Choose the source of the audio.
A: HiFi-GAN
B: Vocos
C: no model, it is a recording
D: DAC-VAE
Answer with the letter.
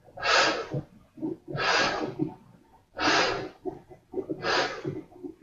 C